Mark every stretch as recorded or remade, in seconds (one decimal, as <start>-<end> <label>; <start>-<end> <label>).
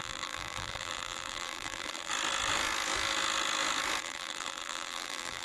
0.0-2.1 remade; 2.1-4.0 recorded; 4.0-5.4 remade